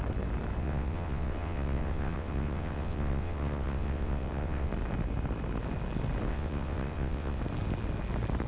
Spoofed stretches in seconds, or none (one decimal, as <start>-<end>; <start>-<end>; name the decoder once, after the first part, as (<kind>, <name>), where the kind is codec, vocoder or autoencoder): 0.6-4.7 (vocoder, WaveNeXt); 6.3-7.4